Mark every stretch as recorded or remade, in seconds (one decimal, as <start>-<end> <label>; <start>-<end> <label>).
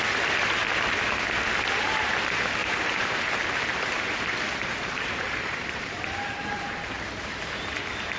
0.0-2.6 recorded; 2.6-7.4 remade; 7.4-8.2 recorded